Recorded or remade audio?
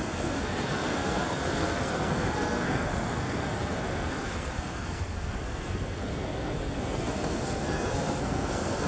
remade